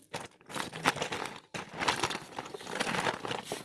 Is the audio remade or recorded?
recorded